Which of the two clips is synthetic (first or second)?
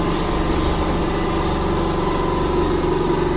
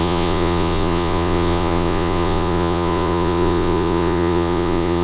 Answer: second